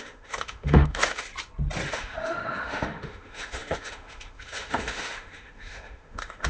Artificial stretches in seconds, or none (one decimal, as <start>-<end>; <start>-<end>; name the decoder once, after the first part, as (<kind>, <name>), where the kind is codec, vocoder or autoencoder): 0.0-1.3 (autoencoder, DAC-VAE); 1.9-6.5